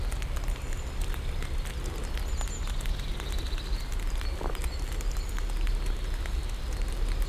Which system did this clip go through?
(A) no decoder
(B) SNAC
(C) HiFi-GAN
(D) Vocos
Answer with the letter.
A